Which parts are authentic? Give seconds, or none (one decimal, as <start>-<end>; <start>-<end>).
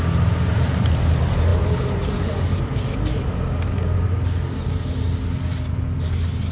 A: 0.0-6.5